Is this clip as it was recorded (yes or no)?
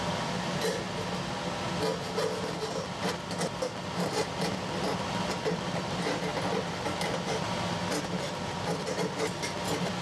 yes